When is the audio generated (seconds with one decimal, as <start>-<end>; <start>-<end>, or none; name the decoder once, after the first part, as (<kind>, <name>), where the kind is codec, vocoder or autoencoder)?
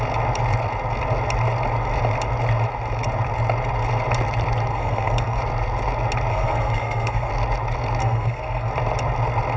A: 4.7-5.4 (codec, SNAC); 6.3-7.3; 8.0-8.7